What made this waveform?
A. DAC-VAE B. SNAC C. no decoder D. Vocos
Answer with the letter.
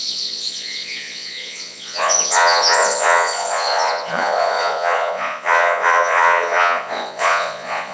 D